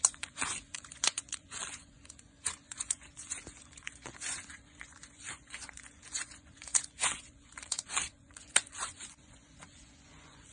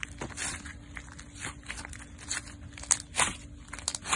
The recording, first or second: second